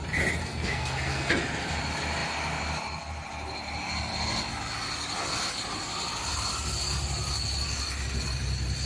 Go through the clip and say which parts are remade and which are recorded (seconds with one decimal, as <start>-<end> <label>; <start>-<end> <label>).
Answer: 0.0-0.4 recorded; 0.4-1.4 remade; 1.4-8.9 recorded